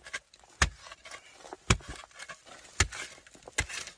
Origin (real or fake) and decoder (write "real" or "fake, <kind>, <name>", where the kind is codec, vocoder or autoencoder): real